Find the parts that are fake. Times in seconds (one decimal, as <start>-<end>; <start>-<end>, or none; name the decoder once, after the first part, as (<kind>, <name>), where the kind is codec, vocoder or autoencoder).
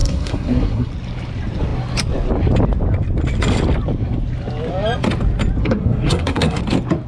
0.0-0.9 (codec, SNAC); 5.6-6.6